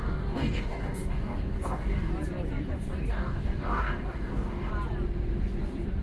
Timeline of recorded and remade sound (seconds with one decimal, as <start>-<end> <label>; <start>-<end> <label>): 0.0-2.1 remade; 2.1-3.1 recorded; 3.1-4.7 remade; 4.7-6.0 recorded